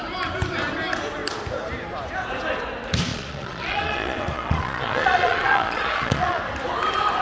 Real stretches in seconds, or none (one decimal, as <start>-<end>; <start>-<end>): 0.0-3.1; 6.4-7.2